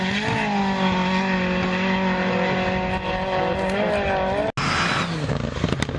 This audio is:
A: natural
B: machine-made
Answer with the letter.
A